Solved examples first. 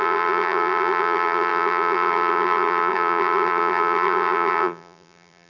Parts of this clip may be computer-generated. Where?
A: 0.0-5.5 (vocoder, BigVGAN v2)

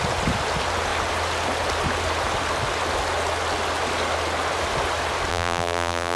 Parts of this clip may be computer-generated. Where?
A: 5.3-6.2 (vocoder, BigVGAN v2)

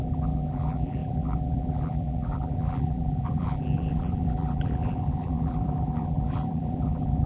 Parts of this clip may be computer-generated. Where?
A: 0.0-7.3 (vocoder, BigVGAN v2)